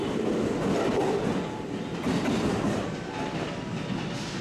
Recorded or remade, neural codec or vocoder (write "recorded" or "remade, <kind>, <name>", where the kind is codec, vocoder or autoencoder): recorded